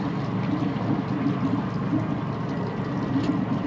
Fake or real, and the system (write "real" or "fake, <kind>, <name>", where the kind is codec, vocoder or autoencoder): real